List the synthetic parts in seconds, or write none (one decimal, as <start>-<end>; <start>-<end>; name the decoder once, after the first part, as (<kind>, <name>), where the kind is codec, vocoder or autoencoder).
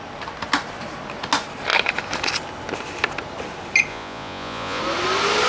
3.9-4.8 (vocoder, Vocos)